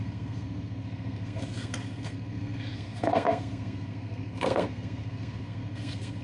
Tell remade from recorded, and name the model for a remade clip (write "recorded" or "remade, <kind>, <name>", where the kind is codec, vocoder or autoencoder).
remade, codec, SNAC